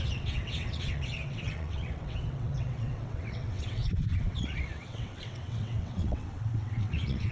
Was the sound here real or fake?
fake